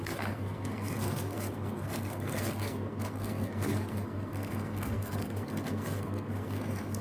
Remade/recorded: remade